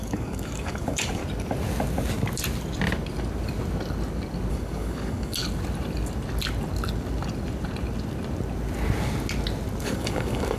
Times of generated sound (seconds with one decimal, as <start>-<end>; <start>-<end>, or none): 0.0-1.2; 4.5-5.4; 9.8-10.6